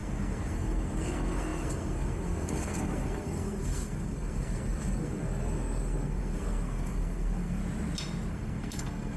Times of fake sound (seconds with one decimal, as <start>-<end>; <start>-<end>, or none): 0.0-7.6; 8.3-9.2